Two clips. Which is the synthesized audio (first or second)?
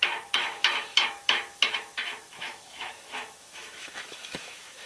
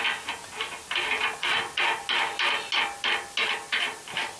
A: first